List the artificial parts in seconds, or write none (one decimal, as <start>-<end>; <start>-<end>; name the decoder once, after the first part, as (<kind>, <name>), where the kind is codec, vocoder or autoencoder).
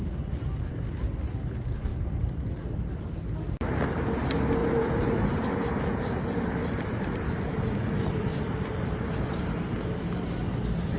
4.6-7.5 (vocoder, BigVGAN v2); 8.3-10.5